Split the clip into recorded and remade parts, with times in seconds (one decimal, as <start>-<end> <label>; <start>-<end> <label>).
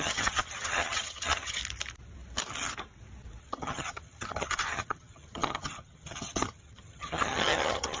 0.0-1.6 remade; 1.6-3.4 recorded; 3.4-8.0 remade